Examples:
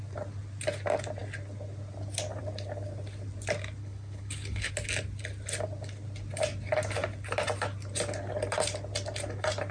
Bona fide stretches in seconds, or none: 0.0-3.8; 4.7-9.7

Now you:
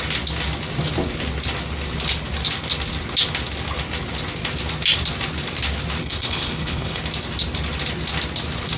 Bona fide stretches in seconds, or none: 0.0-6.0; 7.0-8.8

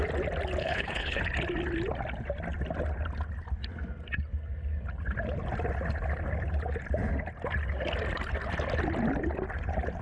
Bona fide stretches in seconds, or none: 0.0-0.6; 1.2-10.0

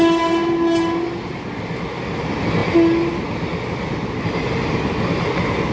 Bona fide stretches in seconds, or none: 0.0-5.7

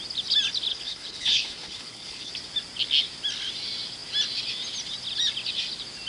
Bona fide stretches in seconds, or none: 0.0-0.7; 2.3-6.1

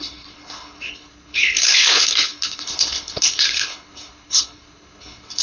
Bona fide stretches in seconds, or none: none

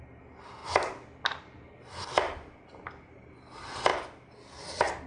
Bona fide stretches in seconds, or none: 0.0-5.1